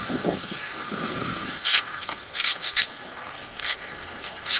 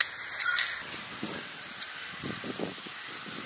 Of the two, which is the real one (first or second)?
second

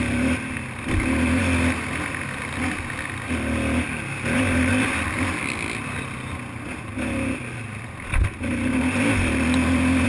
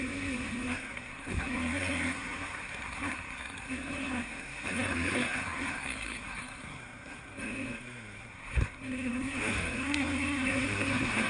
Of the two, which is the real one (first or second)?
first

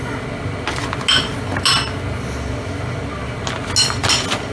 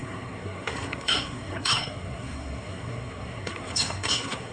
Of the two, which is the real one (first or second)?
first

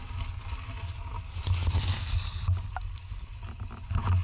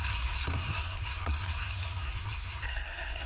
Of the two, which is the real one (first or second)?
first